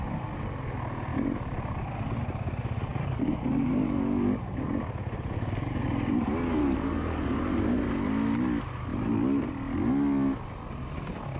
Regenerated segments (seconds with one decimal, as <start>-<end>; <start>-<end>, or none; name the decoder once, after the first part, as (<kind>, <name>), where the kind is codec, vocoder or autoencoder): 2.9-4.5 (codec, DAC); 6.6-7.4